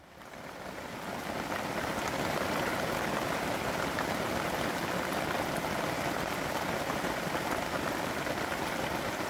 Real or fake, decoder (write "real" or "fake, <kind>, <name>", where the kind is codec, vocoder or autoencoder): real